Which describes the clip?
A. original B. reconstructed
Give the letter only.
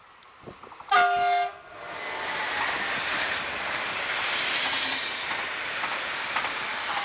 A